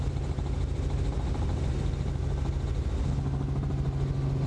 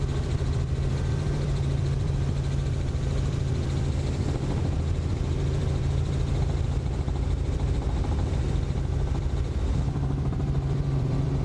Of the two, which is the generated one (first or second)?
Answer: second